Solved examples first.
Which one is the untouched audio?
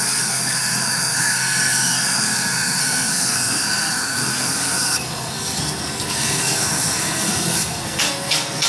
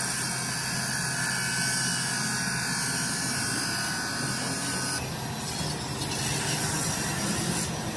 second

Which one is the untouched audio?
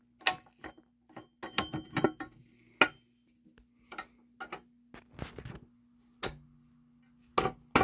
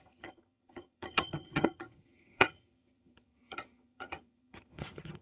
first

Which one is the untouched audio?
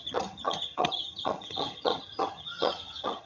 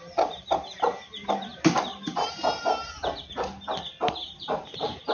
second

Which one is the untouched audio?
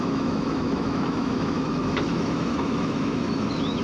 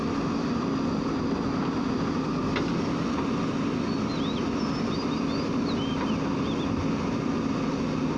second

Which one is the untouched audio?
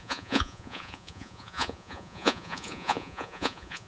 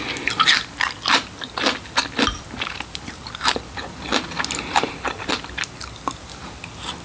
second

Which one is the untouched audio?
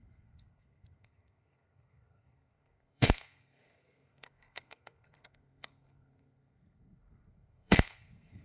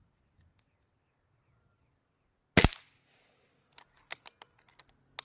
second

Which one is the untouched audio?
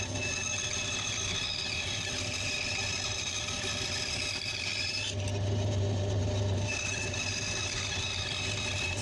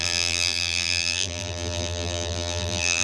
first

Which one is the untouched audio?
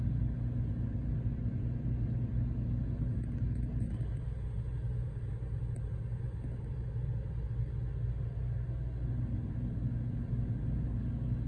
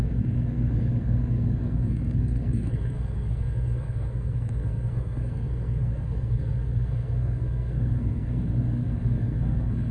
first